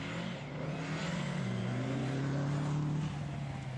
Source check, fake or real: real